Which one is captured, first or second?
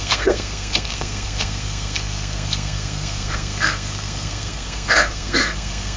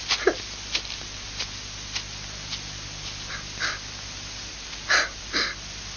second